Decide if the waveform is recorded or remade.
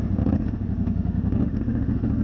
remade